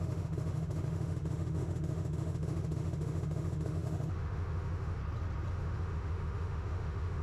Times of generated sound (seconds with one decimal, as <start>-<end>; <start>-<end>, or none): 0.0-5.0; 5.5-7.2